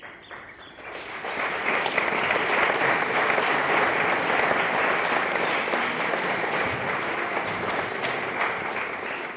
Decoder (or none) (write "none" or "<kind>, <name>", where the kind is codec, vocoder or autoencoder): none